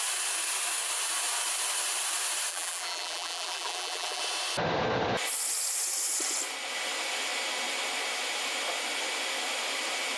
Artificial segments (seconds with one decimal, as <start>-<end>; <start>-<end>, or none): 2.5-4.2